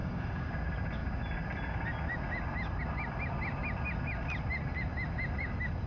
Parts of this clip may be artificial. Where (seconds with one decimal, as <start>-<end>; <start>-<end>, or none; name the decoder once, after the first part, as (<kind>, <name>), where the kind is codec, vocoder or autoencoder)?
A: 0.0-0.5 (codec, DAC)